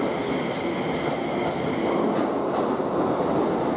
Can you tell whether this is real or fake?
real